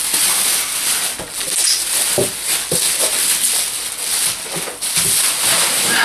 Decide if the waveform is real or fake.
real